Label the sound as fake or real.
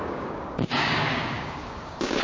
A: fake